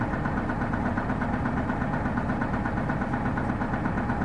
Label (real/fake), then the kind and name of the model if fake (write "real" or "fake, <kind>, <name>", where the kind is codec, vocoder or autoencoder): real